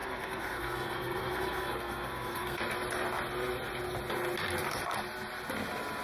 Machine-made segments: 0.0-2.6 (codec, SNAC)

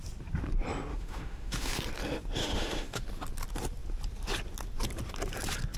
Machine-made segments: 0.9-1.8 (autoencoder, DAC-VAE); 2.4-3.0

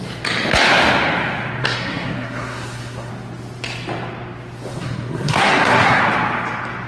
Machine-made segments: 1.6-3.1 (codec, SNAC); 4.7-6.0

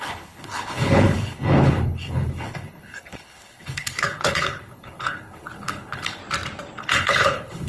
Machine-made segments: 0.0-6.2 (codec, HILCodec); 6.8-7.7

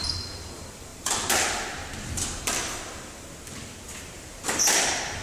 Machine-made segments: none